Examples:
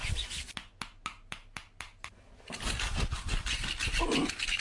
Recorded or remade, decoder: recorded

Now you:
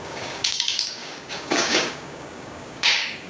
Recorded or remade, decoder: remade, codec, DAC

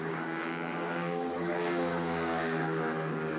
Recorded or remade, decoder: remade, codec, DAC